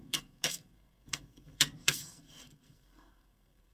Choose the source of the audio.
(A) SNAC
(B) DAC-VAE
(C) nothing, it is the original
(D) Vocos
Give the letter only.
A